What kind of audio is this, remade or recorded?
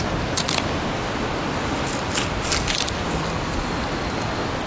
recorded